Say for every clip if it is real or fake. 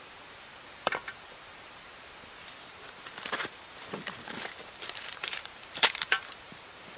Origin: fake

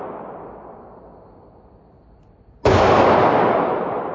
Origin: real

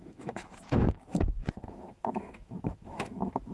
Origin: fake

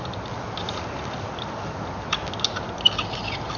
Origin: real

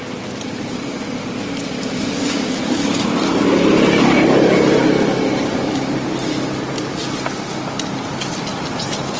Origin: real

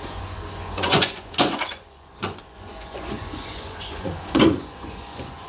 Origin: fake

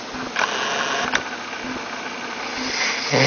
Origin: real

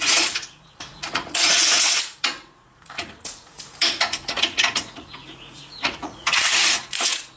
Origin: fake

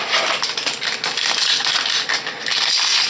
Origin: real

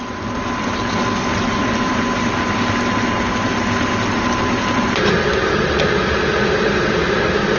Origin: real